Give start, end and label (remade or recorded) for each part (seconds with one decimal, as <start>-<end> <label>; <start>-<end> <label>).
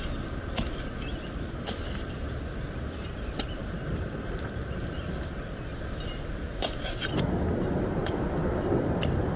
0.0-3.6 recorded; 3.6-4.8 remade; 4.8-9.4 recorded